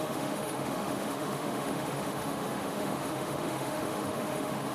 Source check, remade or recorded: remade